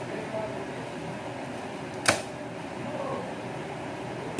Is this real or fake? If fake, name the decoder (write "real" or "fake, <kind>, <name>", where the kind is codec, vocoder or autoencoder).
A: real